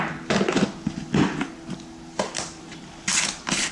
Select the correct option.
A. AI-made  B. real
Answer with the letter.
B